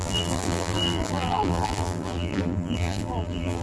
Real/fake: fake